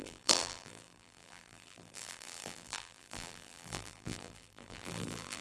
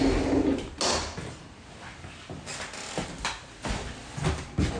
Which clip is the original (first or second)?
second